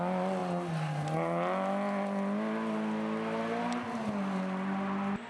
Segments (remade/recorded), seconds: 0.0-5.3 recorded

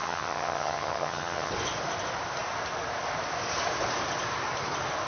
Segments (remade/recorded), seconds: 0.0-1.5 remade; 1.5-5.1 recorded

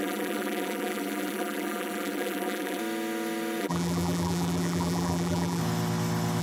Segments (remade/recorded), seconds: 0.0-2.8 remade; 2.8-3.6 recorded; 3.6-5.6 remade; 5.6-6.4 recorded